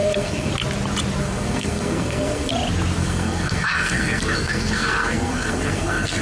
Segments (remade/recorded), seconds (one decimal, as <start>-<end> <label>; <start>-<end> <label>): 0.0-0.5 remade; 0.5-1.2 recorded; 1.2-2.5 remade; 2.5-3.0 recorded; 3.0-6.2 remade